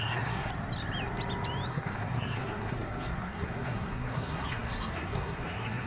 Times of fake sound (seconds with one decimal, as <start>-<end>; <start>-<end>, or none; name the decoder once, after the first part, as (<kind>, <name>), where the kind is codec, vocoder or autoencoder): 0.0-0.5 (codec, SNAC); 1.7-5.9